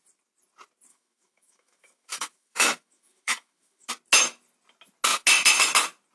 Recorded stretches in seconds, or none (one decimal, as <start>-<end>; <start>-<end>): 0.0-0.9; 3.9-6.1